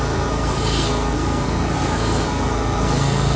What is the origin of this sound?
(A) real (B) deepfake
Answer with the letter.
B